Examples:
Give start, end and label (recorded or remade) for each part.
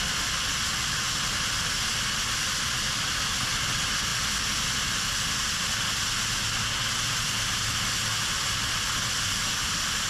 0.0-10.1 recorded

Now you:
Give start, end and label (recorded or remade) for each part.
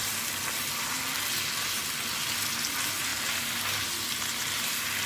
0.0-3.1 recorded; 3.1-3.9 remade; 3.9-5.1 recorded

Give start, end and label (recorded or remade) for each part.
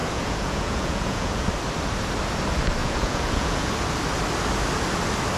0.0-1.5 remade; 1.5-2.8 recorded; 2.8-3.7 remade; 3.7-5.4 recorded